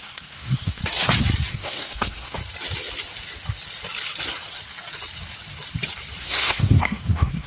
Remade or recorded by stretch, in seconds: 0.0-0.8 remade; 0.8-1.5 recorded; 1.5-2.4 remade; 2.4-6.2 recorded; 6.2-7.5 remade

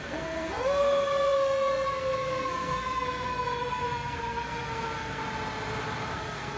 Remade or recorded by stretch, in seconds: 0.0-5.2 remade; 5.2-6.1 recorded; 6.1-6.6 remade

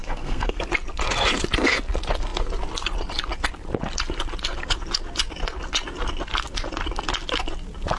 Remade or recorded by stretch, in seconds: 0.0-0.6 remade; 0.6-8.0 recorded

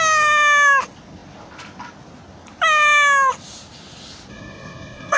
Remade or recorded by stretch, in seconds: 0.0-4.3 recorded; 4.3-5.2 remade